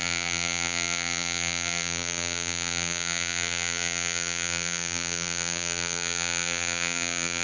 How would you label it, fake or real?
fake